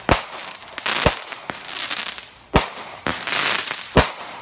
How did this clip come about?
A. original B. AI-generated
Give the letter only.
A